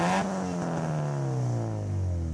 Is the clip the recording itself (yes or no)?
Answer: yes